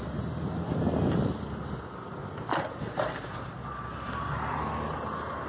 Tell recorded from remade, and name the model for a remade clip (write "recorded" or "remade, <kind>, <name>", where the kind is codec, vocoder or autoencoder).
recorded